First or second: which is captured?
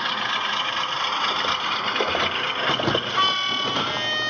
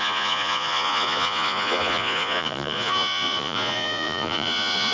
first